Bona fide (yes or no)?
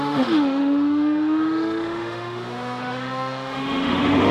no